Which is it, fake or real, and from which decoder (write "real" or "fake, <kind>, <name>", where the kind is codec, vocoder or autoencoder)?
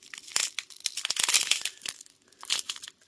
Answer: real